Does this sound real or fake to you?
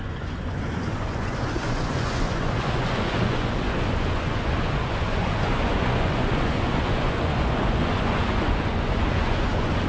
fake